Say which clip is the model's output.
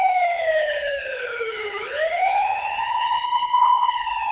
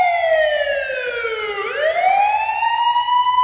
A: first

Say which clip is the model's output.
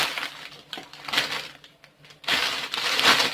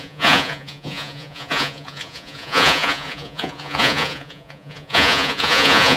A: second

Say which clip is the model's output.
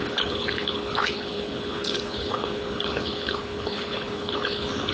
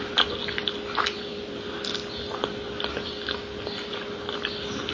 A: first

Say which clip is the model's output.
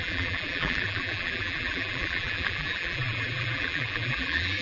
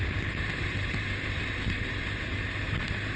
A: first